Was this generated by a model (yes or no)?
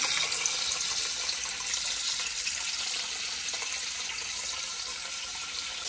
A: no